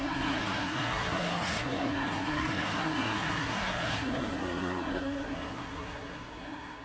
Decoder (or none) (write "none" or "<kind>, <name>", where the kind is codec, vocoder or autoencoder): codec, SNAC